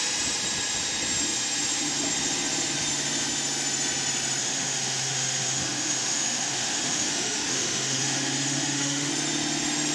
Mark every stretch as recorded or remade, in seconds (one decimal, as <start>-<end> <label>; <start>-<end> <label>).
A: 0.0-4.4 recorded; 4.4-9.1 remade; 9.1-9.9 recorded